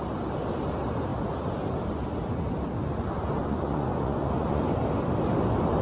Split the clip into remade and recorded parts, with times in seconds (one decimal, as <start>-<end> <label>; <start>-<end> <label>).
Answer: 0.0-3.4 recorded; 3.4-4.6 remade; 4.6-5.8 recorded